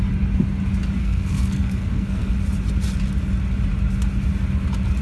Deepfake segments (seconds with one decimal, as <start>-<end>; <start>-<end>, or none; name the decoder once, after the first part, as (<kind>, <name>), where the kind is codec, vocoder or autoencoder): 1.0-2.3 (codec, SNAC)